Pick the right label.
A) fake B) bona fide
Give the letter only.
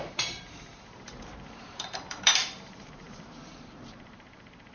A